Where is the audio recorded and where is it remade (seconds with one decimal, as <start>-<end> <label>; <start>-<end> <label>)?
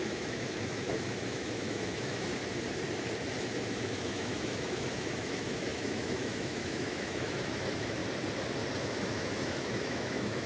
0.0-2.3 remade; 2.3-3.4 recorded; 3.4-8.0 remade; 8.0-8.8 recorded; 8.8-10.5 remade